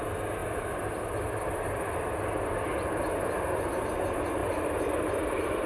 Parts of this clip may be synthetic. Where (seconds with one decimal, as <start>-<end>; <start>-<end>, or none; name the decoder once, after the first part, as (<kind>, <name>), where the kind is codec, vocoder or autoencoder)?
4.4-5.7 (vocoder, BigVGAN v2)